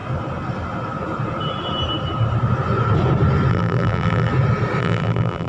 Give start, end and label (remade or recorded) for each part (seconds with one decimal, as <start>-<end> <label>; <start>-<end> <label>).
0.0-3.5 recorded; 3.5-4.3 remade; 4.3-4.8 recorded; 4.8-5.5 remade